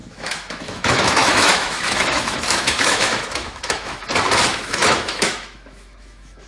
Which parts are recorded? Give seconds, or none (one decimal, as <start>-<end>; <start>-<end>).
4.0-4.5